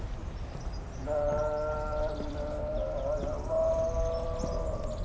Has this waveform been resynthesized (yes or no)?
no